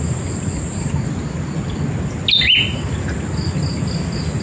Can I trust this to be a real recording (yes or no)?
yes